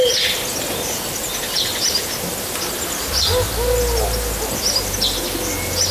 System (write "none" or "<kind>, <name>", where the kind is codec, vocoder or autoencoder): none